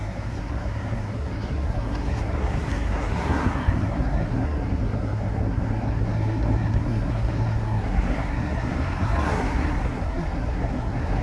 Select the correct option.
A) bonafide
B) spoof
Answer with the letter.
B